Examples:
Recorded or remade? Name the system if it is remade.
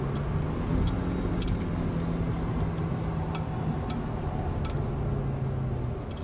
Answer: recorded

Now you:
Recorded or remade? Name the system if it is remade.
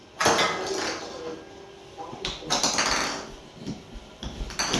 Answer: recorded